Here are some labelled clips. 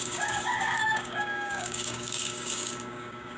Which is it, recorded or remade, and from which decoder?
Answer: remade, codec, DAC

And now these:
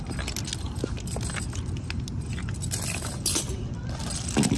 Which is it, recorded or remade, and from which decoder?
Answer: recorded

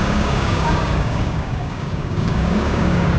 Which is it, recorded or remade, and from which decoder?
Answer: remade, codec, DAC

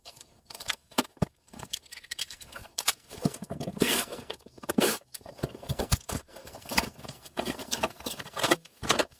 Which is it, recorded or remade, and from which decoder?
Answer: remade, codec, SNAC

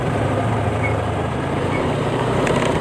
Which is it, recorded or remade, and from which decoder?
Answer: remade, vocoder, BigVGAN v2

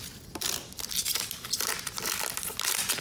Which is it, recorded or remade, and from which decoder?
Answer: remade, vocoder, BigVGAN v2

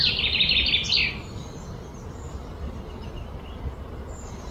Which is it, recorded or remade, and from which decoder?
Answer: recorded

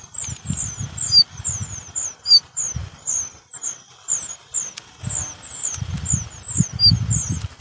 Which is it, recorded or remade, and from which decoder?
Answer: recorded